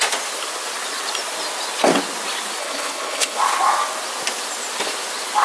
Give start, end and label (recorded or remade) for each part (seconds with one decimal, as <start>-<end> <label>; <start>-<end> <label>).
0.0-2.6 recorded; 2.6-3.4 remade; 3.4-5.4 recorded